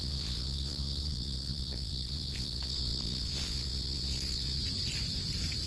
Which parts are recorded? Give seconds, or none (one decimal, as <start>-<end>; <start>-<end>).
4.6-5.7